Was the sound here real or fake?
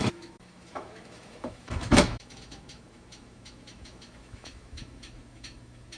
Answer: fake